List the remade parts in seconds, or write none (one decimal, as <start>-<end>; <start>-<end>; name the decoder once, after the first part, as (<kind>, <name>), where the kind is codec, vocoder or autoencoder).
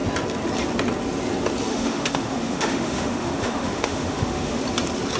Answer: 1.7-4.6 (autoencoder, DAC-VAE)